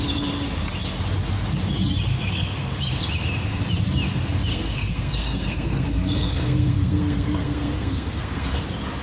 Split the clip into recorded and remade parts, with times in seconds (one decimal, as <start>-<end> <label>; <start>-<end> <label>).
0.0-2.1 recorded; 2.1-2.7 remade; 2.7-4.5 recorded; 4.5-8.6 remade; 8.6-9.0 recorded